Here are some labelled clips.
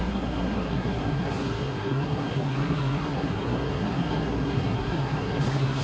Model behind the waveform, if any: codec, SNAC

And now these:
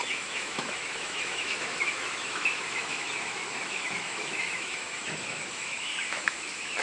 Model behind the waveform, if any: autoencoder, DAC-VAE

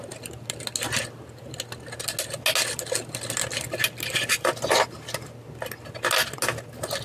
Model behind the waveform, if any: none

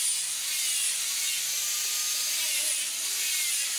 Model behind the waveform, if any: none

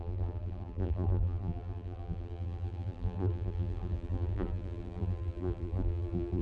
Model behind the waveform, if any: vocoder, BigVGAN v2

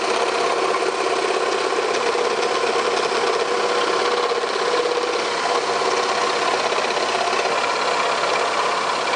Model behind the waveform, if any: none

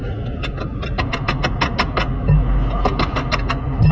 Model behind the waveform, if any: none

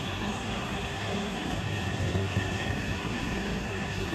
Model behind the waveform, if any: codec, SNAC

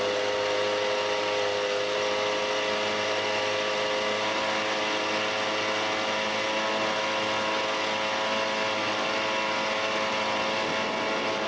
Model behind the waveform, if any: none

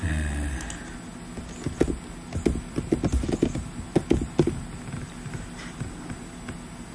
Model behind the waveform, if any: none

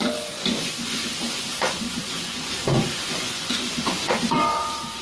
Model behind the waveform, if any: vocoder, Vocos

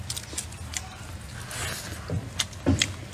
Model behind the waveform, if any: none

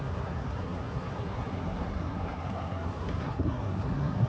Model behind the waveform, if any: codec, SNAC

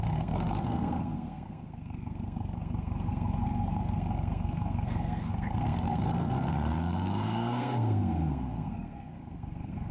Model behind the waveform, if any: codec, SNAC